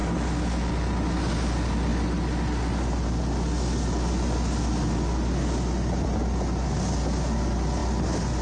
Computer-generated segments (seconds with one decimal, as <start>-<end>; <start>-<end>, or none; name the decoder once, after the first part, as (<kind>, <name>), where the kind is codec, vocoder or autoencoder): none